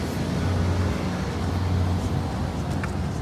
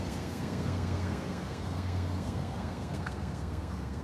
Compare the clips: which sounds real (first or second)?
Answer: first